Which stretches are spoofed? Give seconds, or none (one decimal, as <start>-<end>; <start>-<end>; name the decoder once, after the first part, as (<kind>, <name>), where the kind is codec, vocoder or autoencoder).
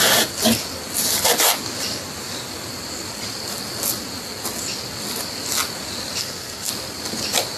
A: 6.2-6.7 (codec, SNAC)